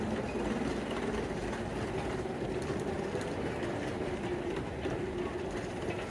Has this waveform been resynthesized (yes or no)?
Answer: no